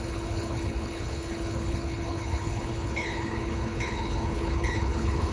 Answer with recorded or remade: remade